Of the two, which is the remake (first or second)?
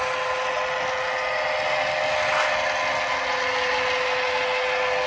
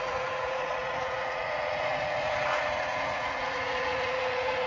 second